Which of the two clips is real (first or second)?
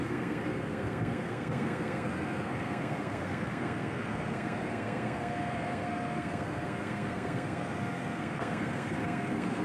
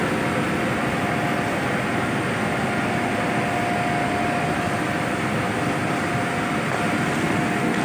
second